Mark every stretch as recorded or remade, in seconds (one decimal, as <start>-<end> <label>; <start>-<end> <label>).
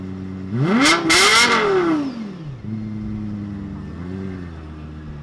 0.0-5.2 recorded